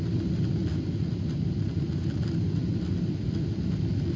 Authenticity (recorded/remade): recorded